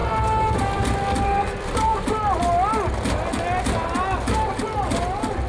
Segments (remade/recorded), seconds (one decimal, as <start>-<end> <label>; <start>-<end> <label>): 0.0-5.5 recorded